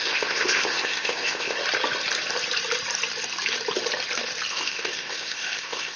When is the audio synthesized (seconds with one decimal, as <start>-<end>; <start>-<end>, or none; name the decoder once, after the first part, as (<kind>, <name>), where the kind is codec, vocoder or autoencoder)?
0.0-1.6 (codec, ZipCodec); 4.5-6.0